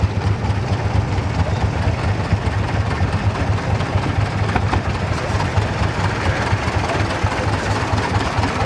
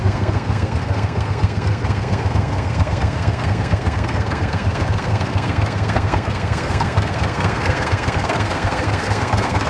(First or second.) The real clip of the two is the first